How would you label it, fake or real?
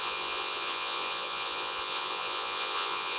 fake